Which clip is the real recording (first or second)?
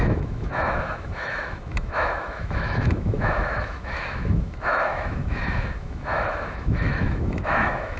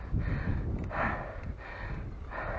second